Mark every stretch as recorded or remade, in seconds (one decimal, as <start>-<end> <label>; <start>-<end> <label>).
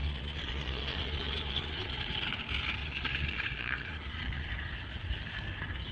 0.0-2.0 remade; 2.0-2.8 recorded; 2.8-4.5 remade; 4.5-5.9 recorded